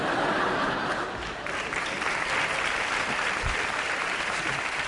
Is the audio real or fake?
real